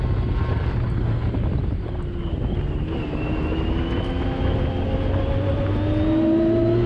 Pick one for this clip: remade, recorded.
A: recorded